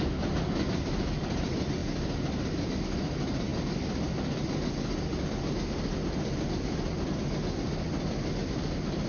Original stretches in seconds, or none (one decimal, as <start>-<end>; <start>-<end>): 0.0-9.1